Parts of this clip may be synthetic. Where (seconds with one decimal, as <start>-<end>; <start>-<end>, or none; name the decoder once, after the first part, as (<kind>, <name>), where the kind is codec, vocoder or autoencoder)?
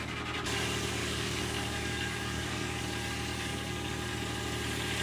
1.0-2.8 (codec, DAC); 3.3-3.9